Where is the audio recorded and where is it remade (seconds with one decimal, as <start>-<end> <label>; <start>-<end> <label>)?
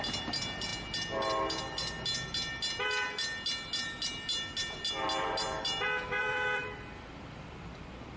0.0-6.2 recorded; 6.2-8.2 remade